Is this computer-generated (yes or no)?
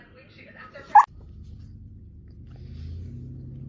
no